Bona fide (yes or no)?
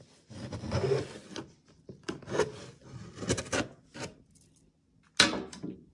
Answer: yes